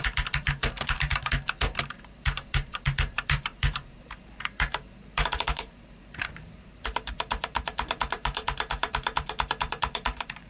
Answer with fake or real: fake